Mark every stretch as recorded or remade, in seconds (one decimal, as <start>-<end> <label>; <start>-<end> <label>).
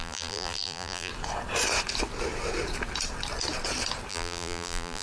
0.0-1.1 remade; 1.1-4.1 recorded; 4.1-5.0 remade